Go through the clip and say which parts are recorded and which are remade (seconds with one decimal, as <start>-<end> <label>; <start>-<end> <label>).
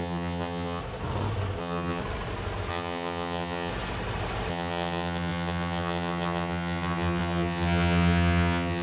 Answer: 0.0-0.8 remade; 0.8-1.6 recorded; 1.6-2.0 remade; 2.0-2.7 recorded; 2.7-3.7 remade; 3.7-4.5 recorded; 4.5-8.8 remade